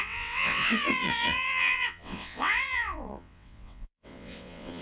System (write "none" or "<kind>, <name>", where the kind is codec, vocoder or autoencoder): vocoder, WaveNeXt